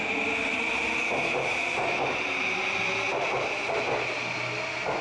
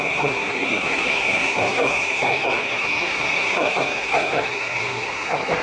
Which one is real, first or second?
first